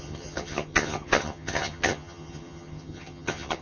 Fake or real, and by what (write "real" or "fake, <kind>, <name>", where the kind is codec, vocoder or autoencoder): fake, vocoder, HiFi-GAN